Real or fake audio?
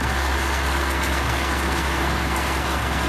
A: fake